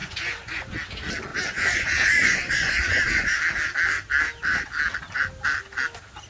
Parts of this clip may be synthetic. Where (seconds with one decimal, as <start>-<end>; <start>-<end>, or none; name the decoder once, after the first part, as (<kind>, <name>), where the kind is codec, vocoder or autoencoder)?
0.0-0.7 (vocoder, Vocos); 1.3-3.4